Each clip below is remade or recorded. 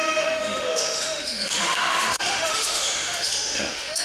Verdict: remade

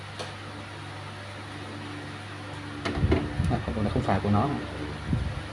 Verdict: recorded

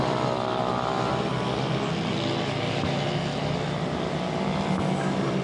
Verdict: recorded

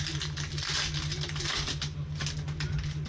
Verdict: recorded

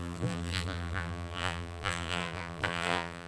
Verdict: remade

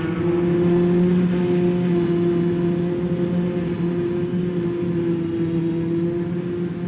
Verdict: recorded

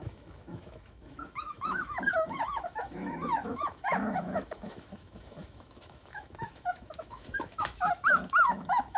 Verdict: remade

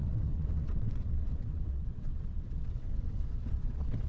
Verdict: remade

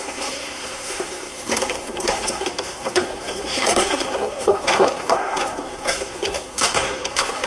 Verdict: remade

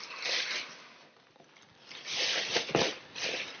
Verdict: recorded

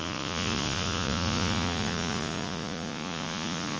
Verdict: remade